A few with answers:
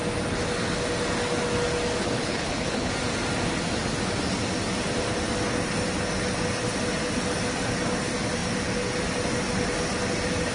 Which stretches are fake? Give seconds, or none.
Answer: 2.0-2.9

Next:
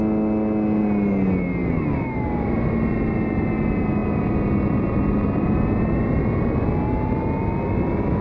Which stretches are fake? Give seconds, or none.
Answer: none

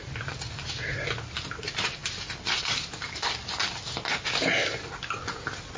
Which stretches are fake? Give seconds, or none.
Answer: none

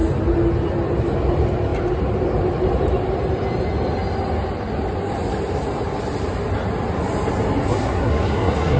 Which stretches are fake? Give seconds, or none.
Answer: 7.7-8.8

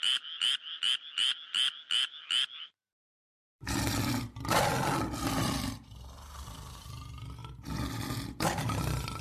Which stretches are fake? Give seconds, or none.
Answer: none

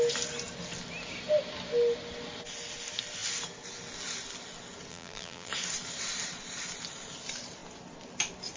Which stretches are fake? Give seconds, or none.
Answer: 4.9-5.5